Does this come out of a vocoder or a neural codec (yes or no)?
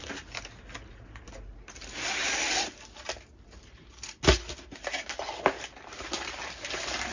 no